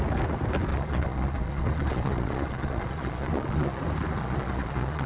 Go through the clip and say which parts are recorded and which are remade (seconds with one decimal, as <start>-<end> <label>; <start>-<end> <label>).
0.0-0.7 recorded; 0.7-3.8 remade; 3.8-4.2 recorded; 4.2-5.1 remade